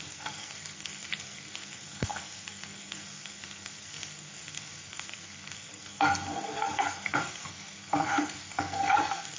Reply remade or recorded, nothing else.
remade